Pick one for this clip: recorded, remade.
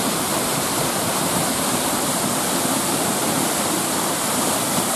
recorded